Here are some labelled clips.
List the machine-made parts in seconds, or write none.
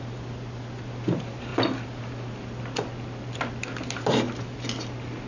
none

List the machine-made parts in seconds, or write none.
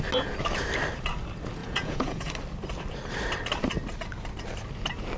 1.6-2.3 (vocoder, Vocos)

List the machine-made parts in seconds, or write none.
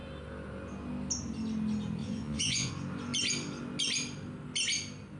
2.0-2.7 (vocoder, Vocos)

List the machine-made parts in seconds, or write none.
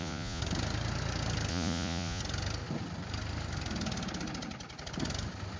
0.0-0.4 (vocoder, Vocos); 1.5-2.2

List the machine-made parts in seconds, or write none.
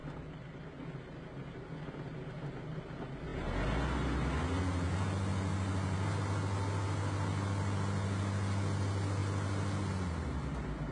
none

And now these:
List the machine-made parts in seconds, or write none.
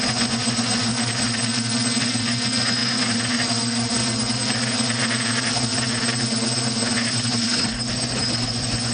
0.0-0.9 (vocoder, Vocos); 2.0-4.0; 6.8-8.9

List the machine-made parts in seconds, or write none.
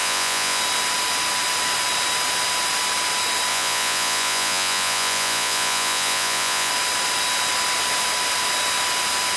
0.0-0.6 (vocoder, Vocos); 3.5-6.7